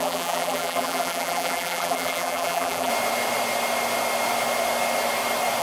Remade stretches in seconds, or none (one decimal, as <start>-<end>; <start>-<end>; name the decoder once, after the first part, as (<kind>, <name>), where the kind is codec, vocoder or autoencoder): 0.0-2.9 (vocoder, BigVGAN v2)